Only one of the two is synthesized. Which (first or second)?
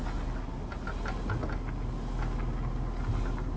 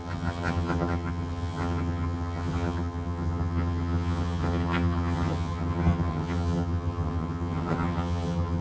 second